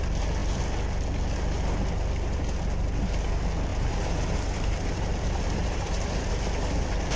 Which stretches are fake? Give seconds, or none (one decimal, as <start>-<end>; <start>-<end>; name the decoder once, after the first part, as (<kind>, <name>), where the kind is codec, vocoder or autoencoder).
3.7-6.3 (vocoder, BigVGAN v2)